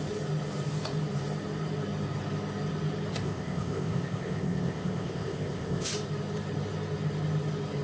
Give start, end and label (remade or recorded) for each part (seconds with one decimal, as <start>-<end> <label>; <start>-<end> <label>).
0.0-3.1 recorded; 3.1-5.9 remade; 5.9-7.8 recorded